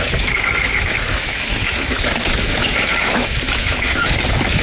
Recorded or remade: remade